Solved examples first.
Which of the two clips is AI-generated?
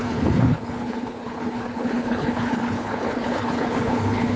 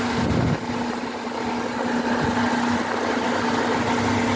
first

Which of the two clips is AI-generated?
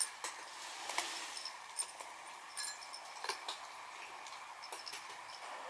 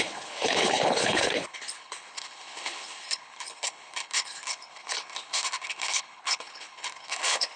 second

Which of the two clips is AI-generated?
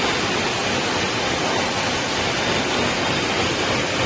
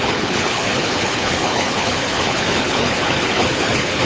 second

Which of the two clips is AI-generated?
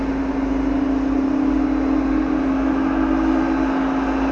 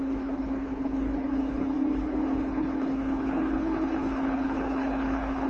second